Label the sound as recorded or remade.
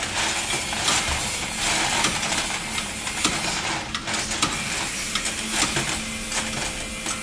recorded